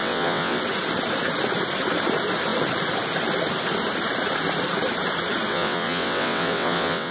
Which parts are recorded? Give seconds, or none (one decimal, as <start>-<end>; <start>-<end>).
0.6-5.5